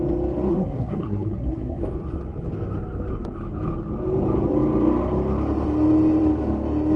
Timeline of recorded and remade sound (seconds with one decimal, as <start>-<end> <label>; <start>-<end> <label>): 0.0-0.5 recorded; 0.5-1.8 remade; 1.8-7.0 recorded